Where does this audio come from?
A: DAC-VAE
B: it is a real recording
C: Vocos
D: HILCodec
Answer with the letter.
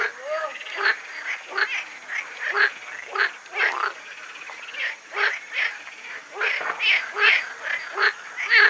B